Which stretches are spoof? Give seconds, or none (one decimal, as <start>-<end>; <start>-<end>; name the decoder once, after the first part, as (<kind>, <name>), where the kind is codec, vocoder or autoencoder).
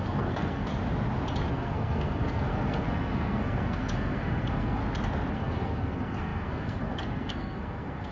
0.0-0.7 (codec, SNAC); 1.5-4.8; 5.3-8.1